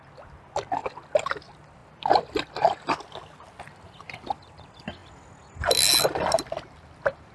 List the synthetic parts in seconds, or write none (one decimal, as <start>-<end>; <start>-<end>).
1.8-2.5